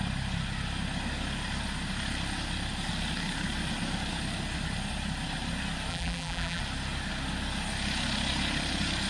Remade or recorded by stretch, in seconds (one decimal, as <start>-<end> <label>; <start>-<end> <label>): 0.0-5.9 recorded; 5.9-6.6 remade; 6.6-9.1 recorded